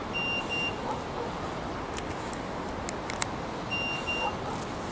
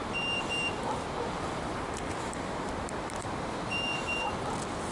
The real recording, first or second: first